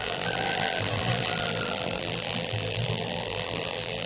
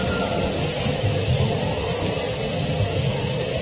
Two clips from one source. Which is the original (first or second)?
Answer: second